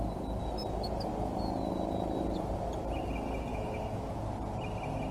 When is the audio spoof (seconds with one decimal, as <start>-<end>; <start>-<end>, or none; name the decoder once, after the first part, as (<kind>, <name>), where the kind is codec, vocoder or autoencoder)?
3.5-4.1 (autoencoder, DAC-VAE)